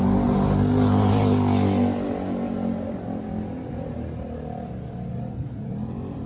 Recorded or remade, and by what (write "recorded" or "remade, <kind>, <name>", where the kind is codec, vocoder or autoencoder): recorded